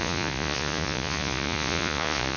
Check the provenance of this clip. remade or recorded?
remade